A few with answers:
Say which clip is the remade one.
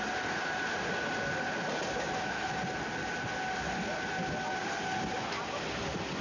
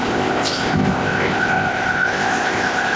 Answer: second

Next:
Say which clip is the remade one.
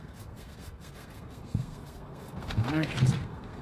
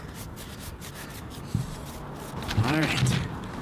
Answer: first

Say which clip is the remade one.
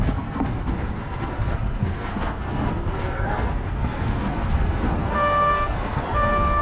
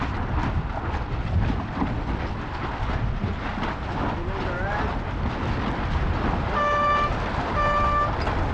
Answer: first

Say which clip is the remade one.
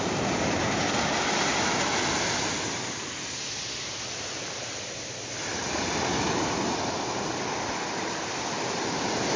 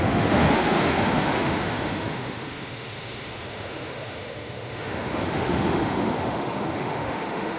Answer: second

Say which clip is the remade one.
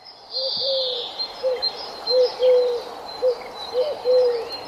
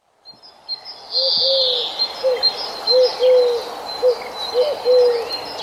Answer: first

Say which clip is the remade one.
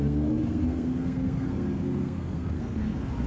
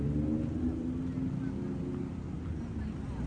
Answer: first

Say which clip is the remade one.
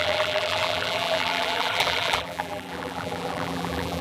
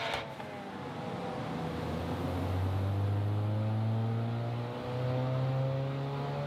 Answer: first